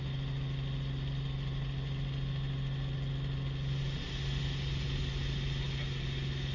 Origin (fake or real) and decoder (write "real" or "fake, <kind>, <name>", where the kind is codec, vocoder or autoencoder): real